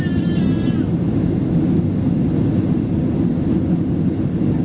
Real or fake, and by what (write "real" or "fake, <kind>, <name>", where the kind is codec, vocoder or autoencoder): real